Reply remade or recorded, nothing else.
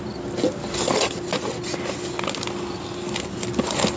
recorded